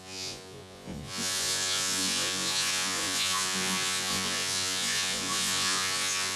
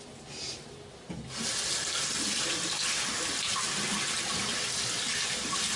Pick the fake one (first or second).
first